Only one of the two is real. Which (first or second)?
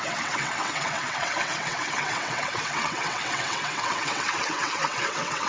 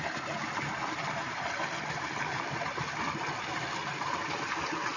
second